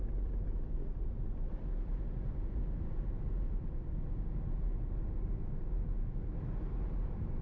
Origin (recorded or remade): recorded